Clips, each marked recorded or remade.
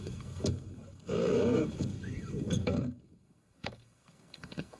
remade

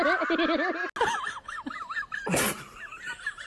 recorded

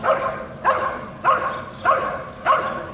recorded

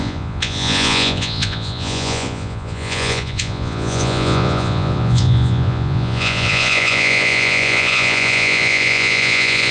remade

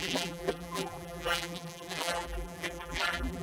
remade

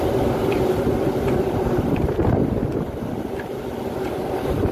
remade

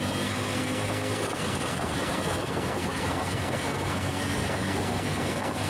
remade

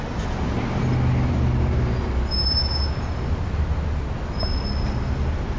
recorded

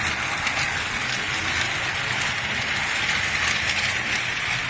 recorded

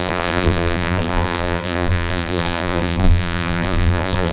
remade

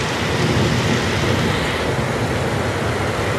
recorded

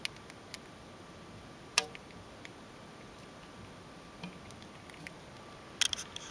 recorded